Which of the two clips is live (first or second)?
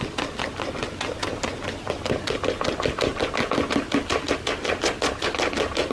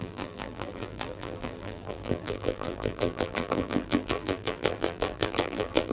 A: first